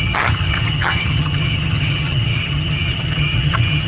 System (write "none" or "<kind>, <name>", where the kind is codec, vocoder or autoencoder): vocoder, HiFi-GAN